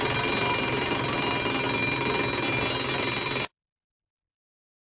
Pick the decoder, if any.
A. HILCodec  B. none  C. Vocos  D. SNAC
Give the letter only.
B